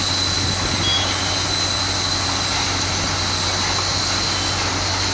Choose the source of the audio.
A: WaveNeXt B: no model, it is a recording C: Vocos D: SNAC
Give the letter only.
B